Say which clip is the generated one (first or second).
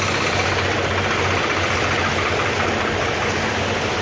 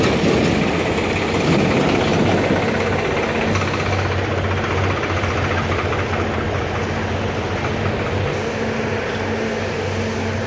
first